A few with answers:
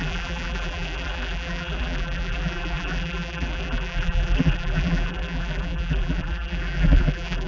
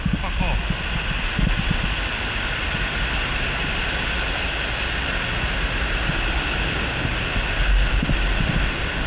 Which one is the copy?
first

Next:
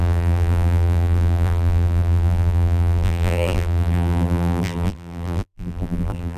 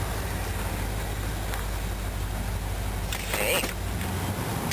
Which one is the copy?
first